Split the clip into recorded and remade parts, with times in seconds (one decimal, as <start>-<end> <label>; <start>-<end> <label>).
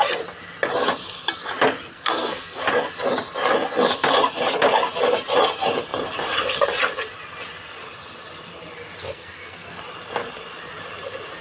0.0-1.9 recorded; 1.9-2.6 remade; 2.6-9.0 recorded; 9.0-9.8 remade; 9.8-11.4 recorded